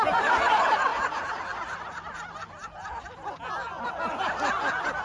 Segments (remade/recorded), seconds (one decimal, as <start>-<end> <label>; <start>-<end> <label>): 0.0-5.0 recorded